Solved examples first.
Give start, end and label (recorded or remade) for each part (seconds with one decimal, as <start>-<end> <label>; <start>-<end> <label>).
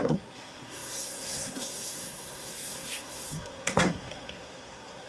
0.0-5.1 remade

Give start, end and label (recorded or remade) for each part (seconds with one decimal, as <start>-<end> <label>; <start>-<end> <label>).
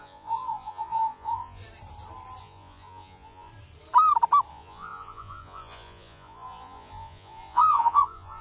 0.0-1.6 remade; 1.6-2.4 recorded; 2.4-3.5 remade; 3.5-4.5 recorded; 4.5-8.4 remade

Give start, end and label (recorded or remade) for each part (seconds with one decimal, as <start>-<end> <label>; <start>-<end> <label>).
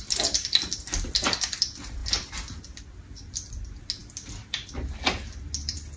0.0-6.0 recorded